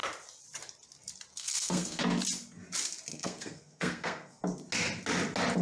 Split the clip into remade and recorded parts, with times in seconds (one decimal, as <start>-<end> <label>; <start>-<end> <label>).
0.0-1.3 recorded; 1.3-2.0 remade; 2.0-3.1 recorded; 3.1-4.4 remade; 4.4-5.6 recorded